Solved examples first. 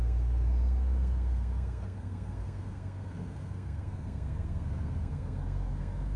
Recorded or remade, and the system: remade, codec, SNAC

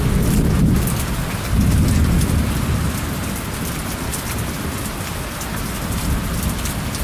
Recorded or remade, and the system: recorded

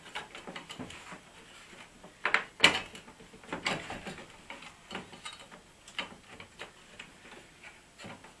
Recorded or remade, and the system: recorded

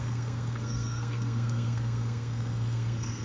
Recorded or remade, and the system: remade, codec, SNAC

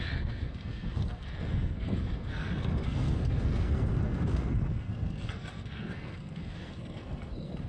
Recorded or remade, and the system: remade, codec, SNAC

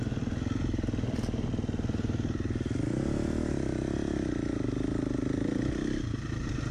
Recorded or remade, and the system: recorded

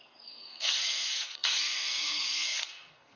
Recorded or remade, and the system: remade, codec, SNAC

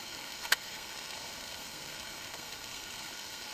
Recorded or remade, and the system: remade, codec, SNAC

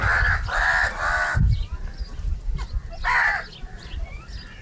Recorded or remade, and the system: recorded